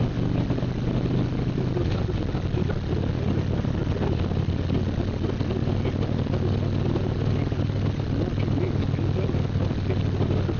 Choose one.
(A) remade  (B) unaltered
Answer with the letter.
B